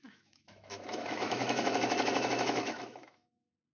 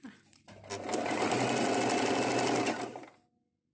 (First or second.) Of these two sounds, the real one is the second